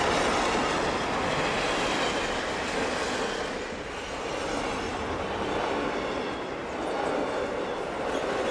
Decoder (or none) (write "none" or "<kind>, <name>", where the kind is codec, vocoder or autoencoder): none